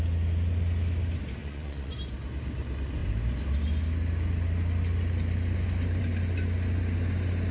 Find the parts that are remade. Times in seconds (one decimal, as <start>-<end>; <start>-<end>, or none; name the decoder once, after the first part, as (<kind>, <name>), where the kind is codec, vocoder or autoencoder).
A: 1.4-1.9 (vocoder, Vocos)